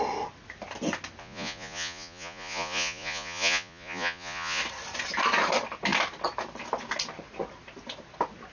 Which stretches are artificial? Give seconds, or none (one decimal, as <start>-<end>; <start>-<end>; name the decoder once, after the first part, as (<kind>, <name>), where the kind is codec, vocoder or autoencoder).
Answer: 1.2-4.6 (vocoder, Vocos)